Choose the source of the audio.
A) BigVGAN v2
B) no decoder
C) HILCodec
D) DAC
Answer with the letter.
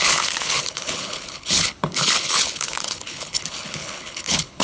C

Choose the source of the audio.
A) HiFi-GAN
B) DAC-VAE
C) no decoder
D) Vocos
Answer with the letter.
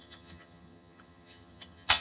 A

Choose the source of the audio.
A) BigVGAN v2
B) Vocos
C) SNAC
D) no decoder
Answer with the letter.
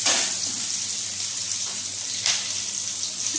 D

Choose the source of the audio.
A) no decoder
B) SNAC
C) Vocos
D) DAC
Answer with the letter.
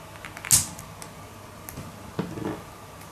A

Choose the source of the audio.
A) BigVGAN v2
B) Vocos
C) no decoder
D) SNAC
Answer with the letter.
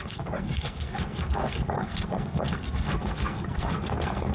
D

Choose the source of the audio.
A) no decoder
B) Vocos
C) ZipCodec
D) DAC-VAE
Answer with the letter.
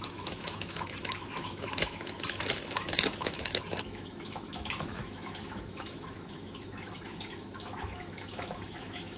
D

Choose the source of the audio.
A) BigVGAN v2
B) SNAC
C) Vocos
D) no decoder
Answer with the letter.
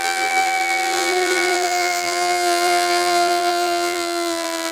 A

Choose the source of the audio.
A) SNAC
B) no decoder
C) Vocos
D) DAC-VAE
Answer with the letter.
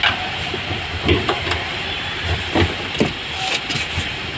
B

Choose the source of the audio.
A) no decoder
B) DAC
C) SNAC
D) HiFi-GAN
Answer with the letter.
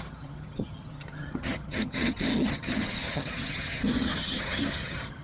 D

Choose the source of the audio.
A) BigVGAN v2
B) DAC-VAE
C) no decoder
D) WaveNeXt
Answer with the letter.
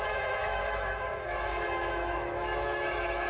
B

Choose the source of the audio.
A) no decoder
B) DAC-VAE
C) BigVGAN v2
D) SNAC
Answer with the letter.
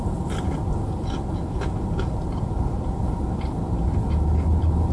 A